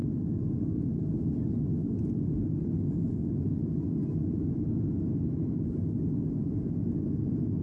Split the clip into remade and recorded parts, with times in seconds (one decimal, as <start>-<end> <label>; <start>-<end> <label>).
0.0-7.6 recorded